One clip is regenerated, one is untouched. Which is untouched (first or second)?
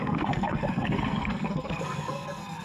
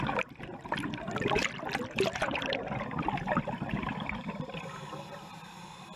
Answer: second